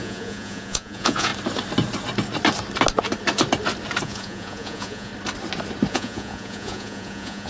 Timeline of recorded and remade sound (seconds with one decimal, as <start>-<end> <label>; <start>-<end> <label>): 0.0-1.3 remade; 1.3-4.0 recorded; 4.0-5.1 remade; 5.1-5.9 recorded; 5.9-7.5 remade